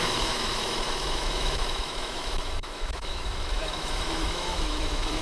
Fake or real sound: fake